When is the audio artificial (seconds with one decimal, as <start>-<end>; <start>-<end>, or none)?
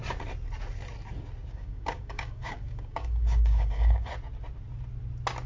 1.5-4.1